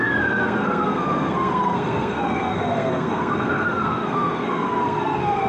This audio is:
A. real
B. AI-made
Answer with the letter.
B